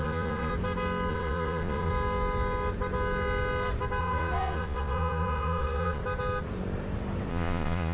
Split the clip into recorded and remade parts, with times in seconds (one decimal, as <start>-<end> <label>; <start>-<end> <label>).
0.0-0.5 remade; 0.5-1.1 recorded; 1.1-1.9 remade; 1.9-4.0 recorded; 4.0-6.0 remade; 6.0-7.3 recorded; 7.3-7.9 remade